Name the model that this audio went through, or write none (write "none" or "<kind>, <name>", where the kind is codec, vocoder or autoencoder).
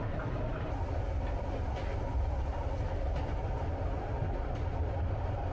none